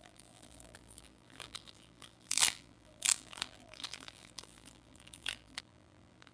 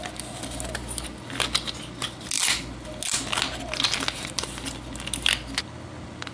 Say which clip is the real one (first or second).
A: second